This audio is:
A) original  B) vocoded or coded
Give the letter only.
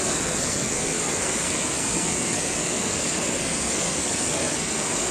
B